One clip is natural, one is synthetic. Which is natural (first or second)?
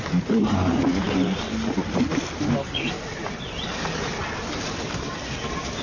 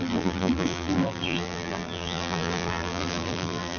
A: first